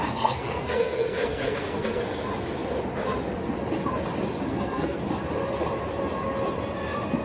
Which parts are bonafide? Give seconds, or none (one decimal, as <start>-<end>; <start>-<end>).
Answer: 2.0-4.5; 5.0-7.2